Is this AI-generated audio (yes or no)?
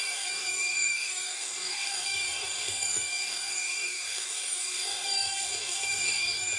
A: yes